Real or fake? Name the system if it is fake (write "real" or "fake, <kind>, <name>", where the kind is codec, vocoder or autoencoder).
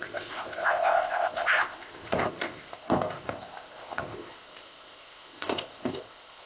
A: fake, codec, ZipCodec